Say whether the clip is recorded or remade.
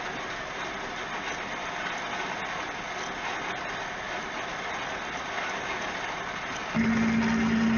recorded